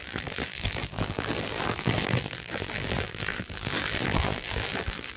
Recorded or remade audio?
remade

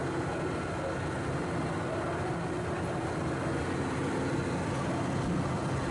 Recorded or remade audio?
recorded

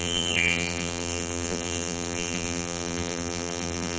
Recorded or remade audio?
remade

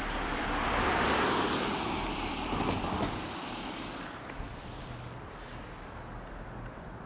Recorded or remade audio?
remade